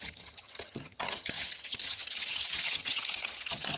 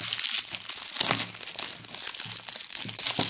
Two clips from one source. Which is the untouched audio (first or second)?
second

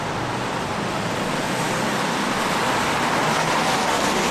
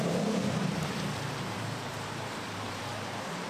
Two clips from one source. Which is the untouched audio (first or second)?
first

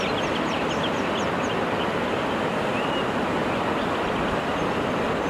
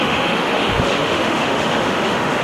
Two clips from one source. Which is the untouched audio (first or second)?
first